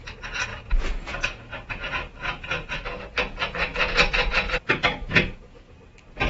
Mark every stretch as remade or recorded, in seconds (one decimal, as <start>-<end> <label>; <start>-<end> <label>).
0.0-0.5 recorded; 0.5-2.7 remade; 2.7-3.7 recorded; 3.7-5.7 remade; 5.7-6.3 recorded